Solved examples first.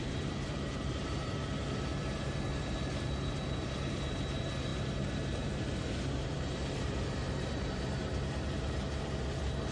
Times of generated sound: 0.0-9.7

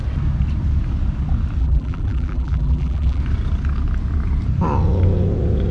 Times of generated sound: 1.6-3.2

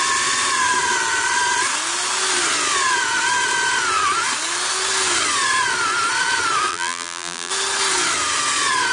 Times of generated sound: 6.7-7.5

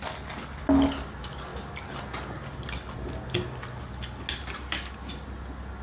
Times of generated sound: none

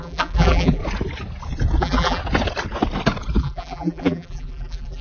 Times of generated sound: 0.0-0.8; 1.8-2.2; 3.4-5.0

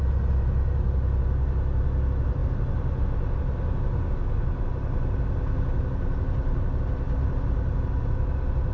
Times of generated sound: 2.4-3.0

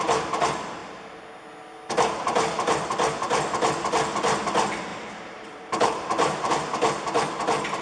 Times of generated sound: 4.9-6.5

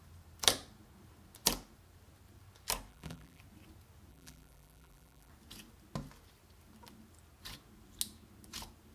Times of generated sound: 2.9-3.4; 4.1-5.3